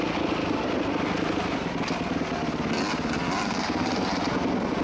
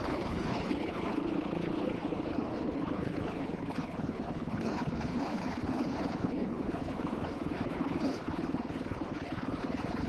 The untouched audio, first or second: first